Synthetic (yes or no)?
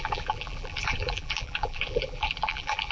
yes